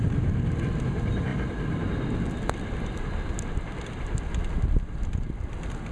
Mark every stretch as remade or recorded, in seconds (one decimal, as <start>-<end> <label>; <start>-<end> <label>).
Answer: 0.0-5.9 recorded